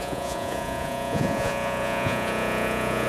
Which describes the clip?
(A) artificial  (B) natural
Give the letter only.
A